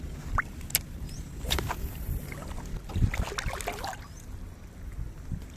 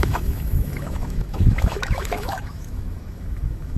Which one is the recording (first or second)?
first